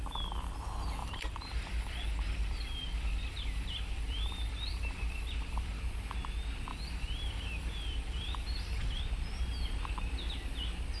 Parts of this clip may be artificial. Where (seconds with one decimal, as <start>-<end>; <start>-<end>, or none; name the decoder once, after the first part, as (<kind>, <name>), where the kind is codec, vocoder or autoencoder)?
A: 1.0-5.8 (vocoder, BigVGAN v2); 6.7-9.0